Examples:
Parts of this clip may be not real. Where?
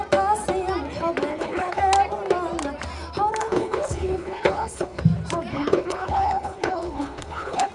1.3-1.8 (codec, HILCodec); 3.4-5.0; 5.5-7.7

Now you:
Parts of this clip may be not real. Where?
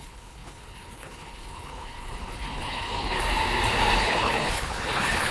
0.0-3.2 (codec, HILCodec); 4.0-5.3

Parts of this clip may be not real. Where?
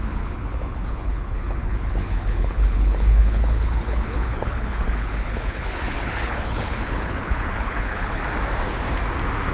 0.0-8.2 (codec, HILCodec)